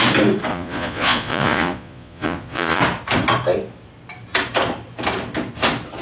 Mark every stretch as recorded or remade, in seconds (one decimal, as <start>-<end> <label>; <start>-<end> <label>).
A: 0.0-0.5 recorded; 0.5-2.8 remade; 2.8-6.0 recorded